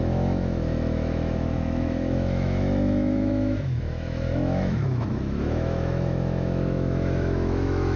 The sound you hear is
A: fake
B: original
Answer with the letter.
A